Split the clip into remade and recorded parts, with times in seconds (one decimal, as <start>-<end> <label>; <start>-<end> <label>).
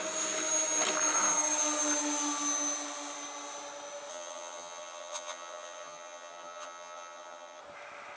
0.0-4.1 recorded; 4.1-7.6 remade; 7.6-8.2 recorded